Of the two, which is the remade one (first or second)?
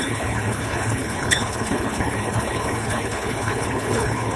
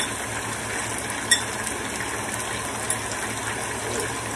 first